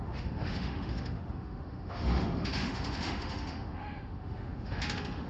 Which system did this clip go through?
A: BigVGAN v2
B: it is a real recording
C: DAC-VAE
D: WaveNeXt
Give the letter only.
C